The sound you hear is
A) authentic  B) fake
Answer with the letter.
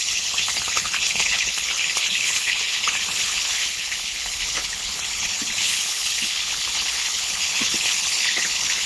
B